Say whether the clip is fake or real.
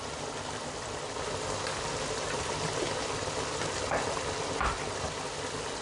real